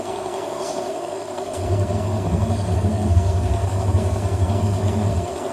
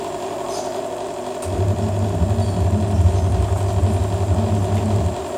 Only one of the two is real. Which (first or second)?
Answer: second